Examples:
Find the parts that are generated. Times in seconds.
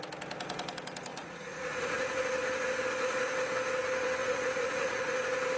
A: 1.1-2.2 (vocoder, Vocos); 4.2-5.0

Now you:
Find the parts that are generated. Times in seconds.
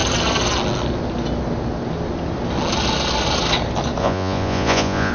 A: 4.0-5.1 (vocoder, Vocos)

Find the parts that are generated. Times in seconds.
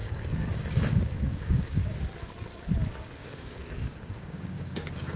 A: 0.0-2.0 (codec, DAC); 3.2-5.2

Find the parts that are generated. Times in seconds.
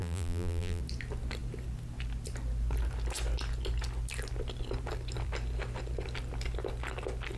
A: 0.0-0.8 (vocoder, BigVGAN v2)